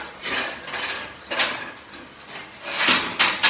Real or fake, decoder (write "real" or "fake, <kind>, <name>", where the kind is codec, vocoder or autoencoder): real